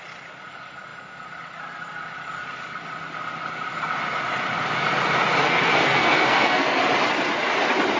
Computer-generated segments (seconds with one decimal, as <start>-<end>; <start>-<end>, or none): 5.4-6.8